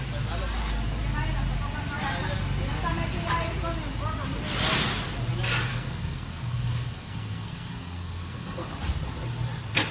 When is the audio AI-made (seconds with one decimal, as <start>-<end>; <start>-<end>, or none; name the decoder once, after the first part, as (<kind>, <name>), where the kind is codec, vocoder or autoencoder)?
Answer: 5.7-8.7 (codec, SNAC)